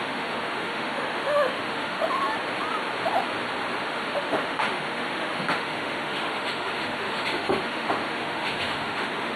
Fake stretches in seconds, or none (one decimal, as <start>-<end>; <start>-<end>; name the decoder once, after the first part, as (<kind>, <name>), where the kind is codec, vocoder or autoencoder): 0.0-2.0 (autoencoder, DAC-VAE); 3.8-9.4